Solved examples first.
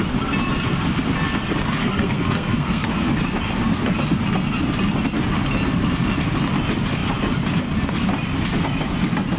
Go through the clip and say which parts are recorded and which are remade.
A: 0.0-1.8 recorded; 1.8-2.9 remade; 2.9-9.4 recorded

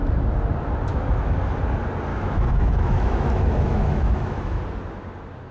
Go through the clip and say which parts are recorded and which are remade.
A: 0.0-0.9 recorded; 0.9-1.4 remade; 1.4-2.1 recorded; 2.1-4.6 remade; 4.6-5.5 recorded

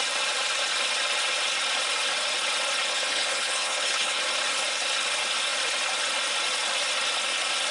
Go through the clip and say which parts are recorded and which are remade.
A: 0.0-2.9 recorded; 2.9-4.2 remade; 4.2-7.7 recorded

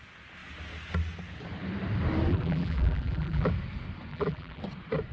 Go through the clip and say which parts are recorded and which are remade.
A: 0.0-2.3 recorded; 2.3-3.5 remade; 3.5-4.1 recorded; 4.1-4.6 remade; 4.6-5.1 recorded

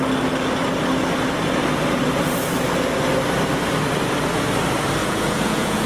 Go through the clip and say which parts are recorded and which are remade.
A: 0.0-5.0 recorded; 5.0-5.9 remade

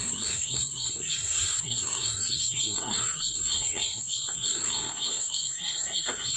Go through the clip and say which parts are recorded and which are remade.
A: 0.0-6.4 remade